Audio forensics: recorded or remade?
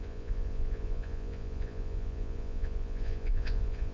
remade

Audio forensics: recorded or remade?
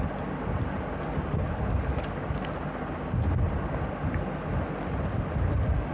recorded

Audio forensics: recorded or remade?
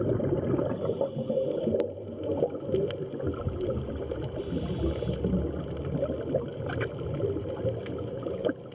recorded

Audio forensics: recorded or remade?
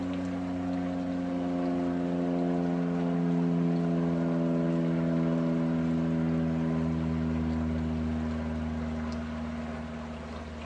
recorded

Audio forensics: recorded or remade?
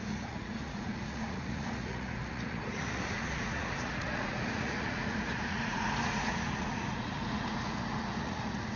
remade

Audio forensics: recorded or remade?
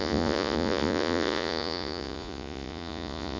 remade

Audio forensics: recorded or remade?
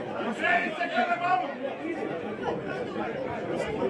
remade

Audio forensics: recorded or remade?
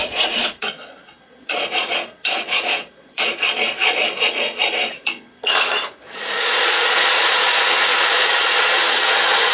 remade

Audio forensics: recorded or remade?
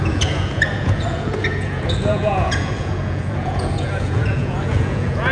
remade